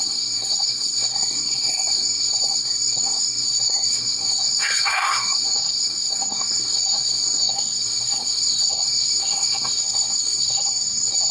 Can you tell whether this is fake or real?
fake